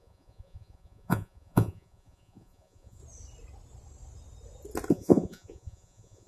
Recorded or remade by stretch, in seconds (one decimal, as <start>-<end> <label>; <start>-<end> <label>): 0.0-3.0 remade; 3.0-4.9 recorded; 4.9-6.3 remade